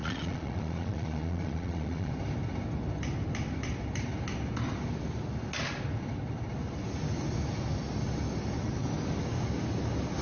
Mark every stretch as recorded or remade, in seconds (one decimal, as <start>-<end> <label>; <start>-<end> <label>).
0.0-2.1 remade; 2.1-10.2 recorded